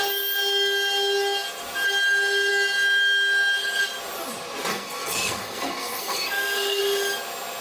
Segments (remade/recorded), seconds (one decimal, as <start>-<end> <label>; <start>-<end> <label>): 0.0-4.7 recorded; 4.7-6.8 remade; 6.8-7.6 recorded

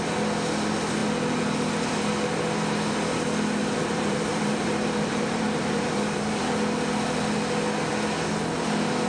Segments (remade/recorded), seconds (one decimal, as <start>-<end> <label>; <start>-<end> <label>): 0.0-3.6 recorded; 3.6-6.4 remade; 6.4-9.1 recorded

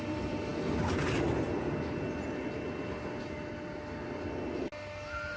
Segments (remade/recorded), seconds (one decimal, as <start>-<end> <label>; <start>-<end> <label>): 0.0-5.4 recorded

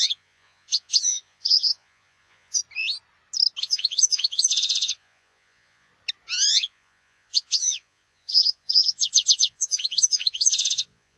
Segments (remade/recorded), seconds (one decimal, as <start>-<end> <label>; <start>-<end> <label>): 0.0-2.6 remade; 2.6-3.6 recorded; 3.6-5.9 remade; 5.9-6.5 recorded; 6.5-11.2 remade

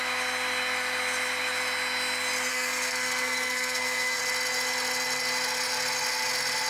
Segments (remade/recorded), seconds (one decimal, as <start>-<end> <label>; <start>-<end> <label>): 0.0-2.5 recorded; 2.5-4.2 remade; 4.2-6.7 recorded

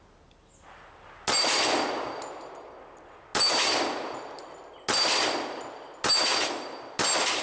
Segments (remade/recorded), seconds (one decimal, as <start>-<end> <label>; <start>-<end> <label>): 0.0-7.4 recorded